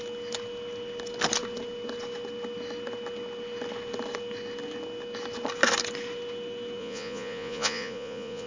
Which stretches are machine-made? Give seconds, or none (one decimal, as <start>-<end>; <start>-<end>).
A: 6.8-8.5